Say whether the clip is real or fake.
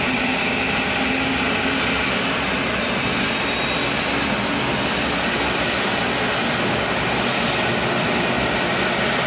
real